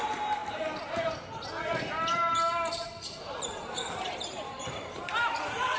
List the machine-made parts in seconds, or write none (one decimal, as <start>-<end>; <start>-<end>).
0.0-0.4; 2.7-5.8